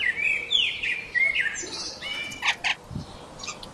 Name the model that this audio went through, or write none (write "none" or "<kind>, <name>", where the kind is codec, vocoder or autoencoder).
none